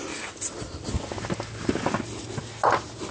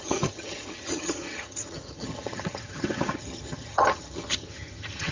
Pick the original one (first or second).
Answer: first